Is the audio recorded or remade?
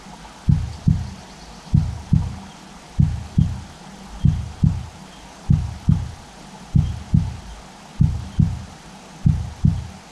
recorded